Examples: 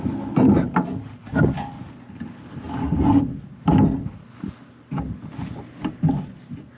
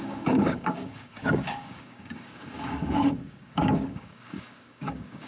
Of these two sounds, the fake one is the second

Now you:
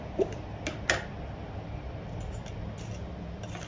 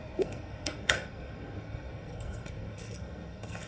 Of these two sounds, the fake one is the second